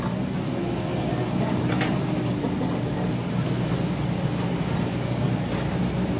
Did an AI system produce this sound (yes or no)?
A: no